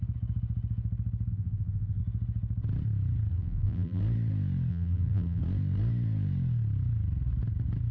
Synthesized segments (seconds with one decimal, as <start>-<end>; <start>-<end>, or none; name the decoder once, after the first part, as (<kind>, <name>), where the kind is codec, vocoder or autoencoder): 1.3-2.0 (vocoder, BigVGAN v2); 3.3-4.0; 4.7-5.4